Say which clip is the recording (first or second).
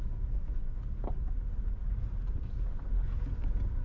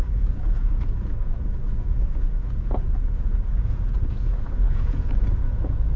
first